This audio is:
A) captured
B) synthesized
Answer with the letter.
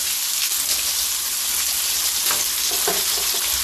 A